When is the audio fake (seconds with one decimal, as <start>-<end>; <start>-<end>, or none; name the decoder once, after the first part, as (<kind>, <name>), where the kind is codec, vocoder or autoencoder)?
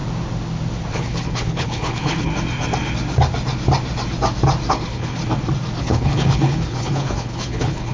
0.9-2.3 (codec, HILCodec); 4.7-5.2; 5.8-7.9